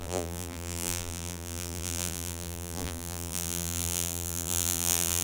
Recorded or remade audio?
remade